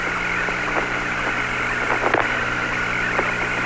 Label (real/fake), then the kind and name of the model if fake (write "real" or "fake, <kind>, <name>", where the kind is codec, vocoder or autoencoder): real